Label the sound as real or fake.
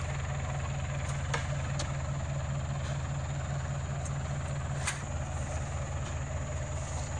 real